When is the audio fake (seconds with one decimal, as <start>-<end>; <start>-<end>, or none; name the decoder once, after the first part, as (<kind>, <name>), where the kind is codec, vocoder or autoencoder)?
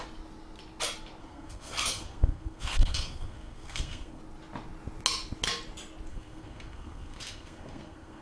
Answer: 1.2-4.2 (codec, SNAC); 6.1-8.2